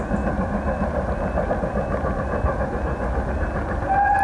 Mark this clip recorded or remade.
recorded